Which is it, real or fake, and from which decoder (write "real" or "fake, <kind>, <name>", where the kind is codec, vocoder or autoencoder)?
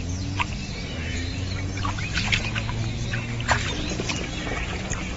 real